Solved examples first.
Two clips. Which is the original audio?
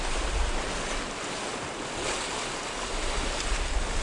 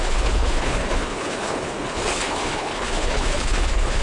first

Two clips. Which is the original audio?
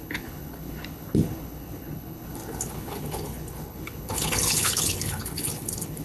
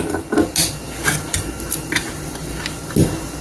second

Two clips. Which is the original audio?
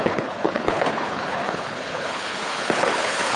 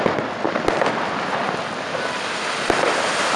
second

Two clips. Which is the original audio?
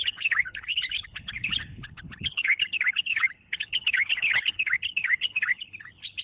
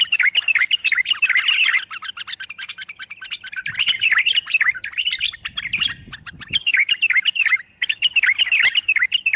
second